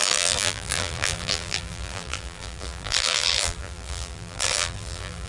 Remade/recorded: remade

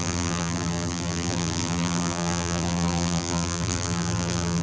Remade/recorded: remade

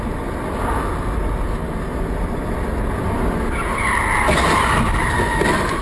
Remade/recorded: recorded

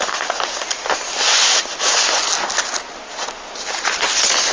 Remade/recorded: recorded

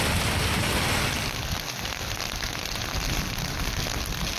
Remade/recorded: recorded